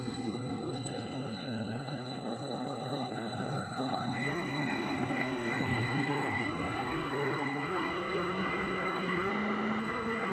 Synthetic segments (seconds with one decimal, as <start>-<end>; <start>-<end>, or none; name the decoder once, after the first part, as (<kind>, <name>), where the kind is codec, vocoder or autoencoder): 0.0-9.3 (codec, SNAC); 9.8-10.3